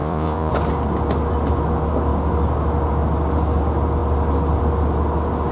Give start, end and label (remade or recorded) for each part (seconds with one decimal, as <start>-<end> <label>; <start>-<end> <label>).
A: 0.0-0.5 remade; 0.5-5.5 recorded